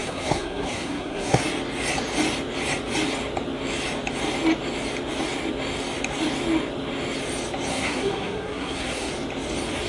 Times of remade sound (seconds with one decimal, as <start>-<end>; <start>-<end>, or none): 0.0-1.4; 7.7-9.1